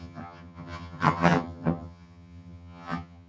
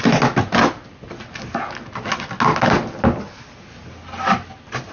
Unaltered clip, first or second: second